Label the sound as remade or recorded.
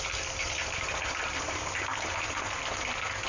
recorded